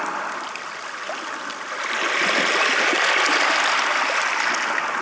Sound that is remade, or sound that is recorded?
recorded